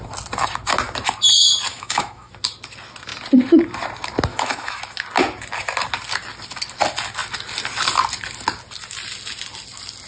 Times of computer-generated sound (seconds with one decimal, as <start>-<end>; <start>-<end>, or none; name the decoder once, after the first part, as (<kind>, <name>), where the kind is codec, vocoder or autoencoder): 1.7-2.3 (autoencoder, DAC-VAE); 4.3-4.8

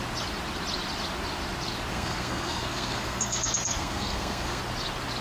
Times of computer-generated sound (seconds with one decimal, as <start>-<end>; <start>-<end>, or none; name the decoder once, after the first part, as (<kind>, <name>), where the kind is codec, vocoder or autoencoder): 1.9-4.6 (codec, SNAC)